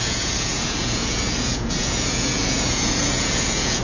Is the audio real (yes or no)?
no